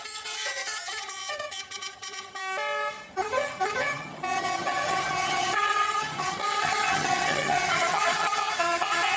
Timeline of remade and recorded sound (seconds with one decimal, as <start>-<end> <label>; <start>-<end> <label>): 0.0-2.4 remade; 2.4-3.1 recorded; 3.1-9.2 remade